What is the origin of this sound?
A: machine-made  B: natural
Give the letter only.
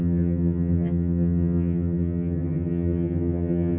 A